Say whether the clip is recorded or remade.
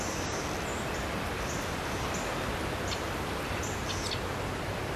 recorded